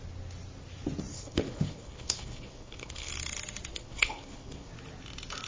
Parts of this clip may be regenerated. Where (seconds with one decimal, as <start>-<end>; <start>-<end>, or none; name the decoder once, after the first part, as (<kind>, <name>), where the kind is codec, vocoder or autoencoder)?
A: 1.1-3.1 (codec, HILCodec); 3.7-4.7